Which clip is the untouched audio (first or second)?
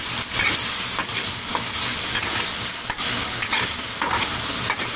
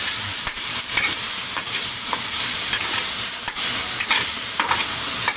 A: first